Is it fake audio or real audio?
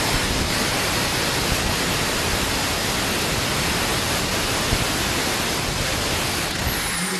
real